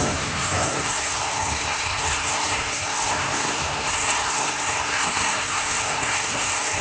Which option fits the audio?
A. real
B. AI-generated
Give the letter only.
B